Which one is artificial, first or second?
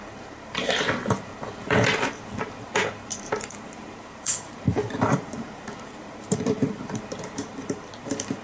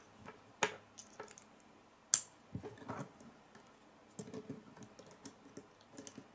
first